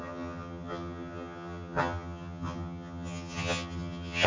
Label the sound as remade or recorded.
remade